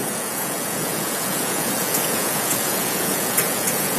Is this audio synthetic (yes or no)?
yes